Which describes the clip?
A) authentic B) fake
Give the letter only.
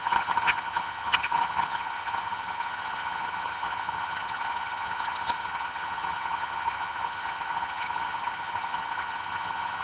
B